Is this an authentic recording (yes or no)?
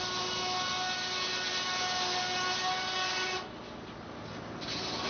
yes